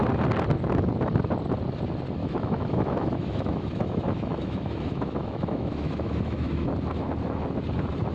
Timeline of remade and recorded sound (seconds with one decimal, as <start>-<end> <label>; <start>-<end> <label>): 0.0-2.2 recorded; 2.2-6.7 remade; 6.7-8.1 recorded